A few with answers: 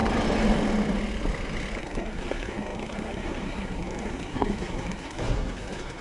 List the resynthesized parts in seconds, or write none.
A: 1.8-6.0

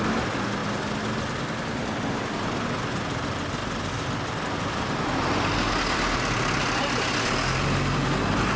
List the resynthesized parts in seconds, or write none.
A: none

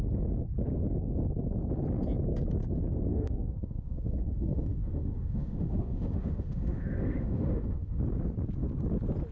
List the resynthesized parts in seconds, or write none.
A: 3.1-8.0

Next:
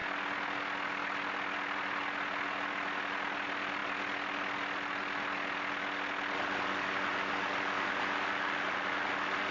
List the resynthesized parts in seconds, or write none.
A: none

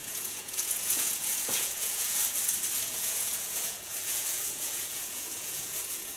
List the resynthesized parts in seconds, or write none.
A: 0.0-2.2; 2.8-6.2

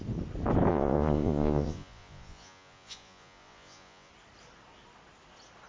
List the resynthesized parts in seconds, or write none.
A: 0.7-4.1